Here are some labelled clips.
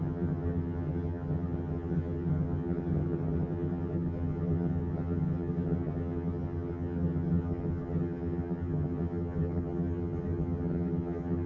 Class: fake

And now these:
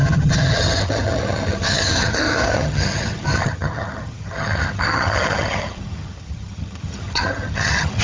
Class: fake